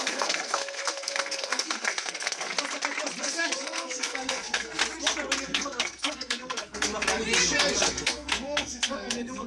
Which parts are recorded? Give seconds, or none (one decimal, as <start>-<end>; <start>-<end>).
2.5-3.2; 4.8-5.4; 6.9-7.8